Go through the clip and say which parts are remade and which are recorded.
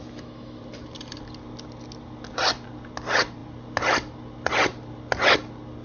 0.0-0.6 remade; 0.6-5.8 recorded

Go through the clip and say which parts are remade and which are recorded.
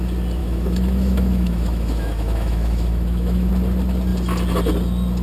0.0-0.4 recorded; 0.4-3.5 remade; 3.5-5.2 recorded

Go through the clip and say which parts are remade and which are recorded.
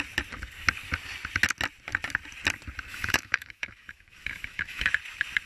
0.0-2.9 recorded; 2.9-4.9 remade; 4.9-5.5 recorded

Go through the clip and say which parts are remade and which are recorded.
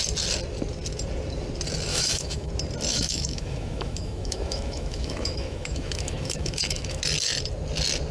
0.0-1.9 recorded; 1.9-2.5 remade; 2.5-2.9 recorded; 2.9-7.0 remade; 7.0-8.1 recorded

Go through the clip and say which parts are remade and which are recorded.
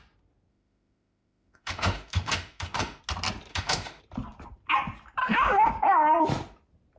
0.0-0.5 recorded; 0.5-3.0 remade; 3.0-3.5 recorded; 3.5-4.0 remade; 4.0-5.2 recorded; 5.2-5.7 remade; 5.7-7.0 recorded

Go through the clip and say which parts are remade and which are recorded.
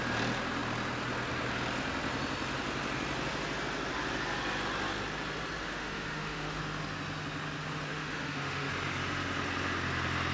0.0-5.6 recorded; 5.6-6.6 remade; 6.6-7.9 recorded; 7.9-8.7 remade; 8.7-10.3 recorded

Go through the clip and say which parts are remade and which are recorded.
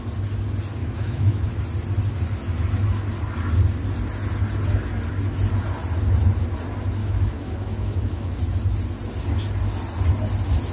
0.0-0.8 recorded; 0.8-1.5 remade; 1.5-7.0 recorded; 7.0-8.4 remade; 8.4-10.7 recorded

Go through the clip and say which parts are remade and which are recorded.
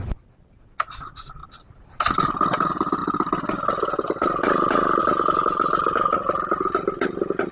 0.0-7.5 recorded